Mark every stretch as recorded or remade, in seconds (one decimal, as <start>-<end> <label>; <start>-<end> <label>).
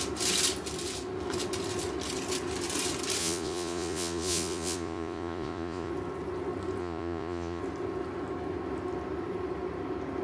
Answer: 0.0-3.2 recorded; 3.2-5.9 remade; 5.9-6.8 recorded; 6.8-7.6 remade; 7.6-10.2 recorded